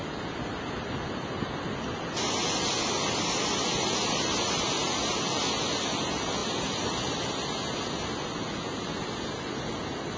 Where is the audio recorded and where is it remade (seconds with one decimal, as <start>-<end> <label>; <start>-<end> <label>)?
0.0-6.4 recorded; 6.4-7.3 remade; 7.3-10.2 recorded